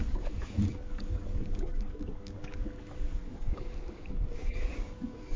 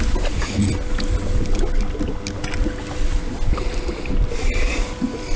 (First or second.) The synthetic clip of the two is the first